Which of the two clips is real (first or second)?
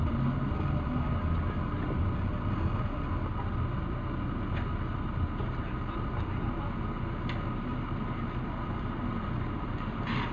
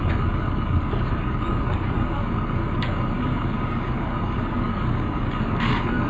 first